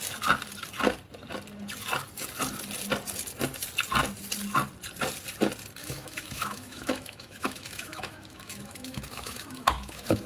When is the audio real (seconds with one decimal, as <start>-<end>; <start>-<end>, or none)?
0.0-5.8